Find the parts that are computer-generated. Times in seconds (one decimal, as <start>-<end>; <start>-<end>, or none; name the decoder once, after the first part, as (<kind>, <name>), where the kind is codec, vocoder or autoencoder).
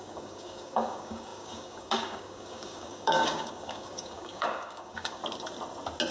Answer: 0.0-5.2 (codec, DAC)